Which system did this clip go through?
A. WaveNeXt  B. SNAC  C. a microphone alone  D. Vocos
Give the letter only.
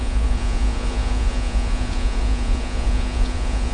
D